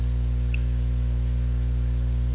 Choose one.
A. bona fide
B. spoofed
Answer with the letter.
B